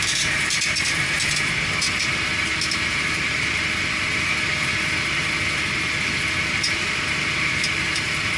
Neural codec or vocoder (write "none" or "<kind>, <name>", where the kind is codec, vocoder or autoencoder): vocoder, BigVGAN v2